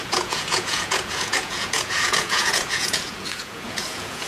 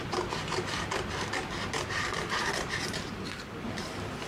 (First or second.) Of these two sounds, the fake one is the first